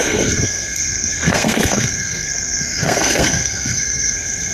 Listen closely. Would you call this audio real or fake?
fake